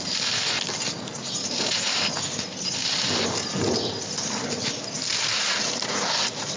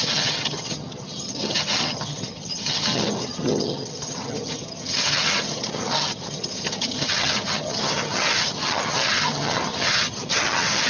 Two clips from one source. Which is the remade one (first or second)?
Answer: second